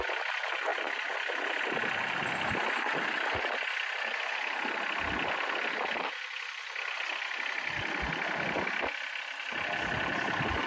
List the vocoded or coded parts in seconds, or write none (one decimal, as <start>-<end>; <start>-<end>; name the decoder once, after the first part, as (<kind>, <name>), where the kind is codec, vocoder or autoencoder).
0.7-1.6 (vocoder, BigVGAN v2)